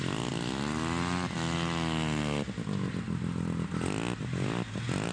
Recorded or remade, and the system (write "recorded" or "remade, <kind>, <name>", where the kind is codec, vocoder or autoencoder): recorded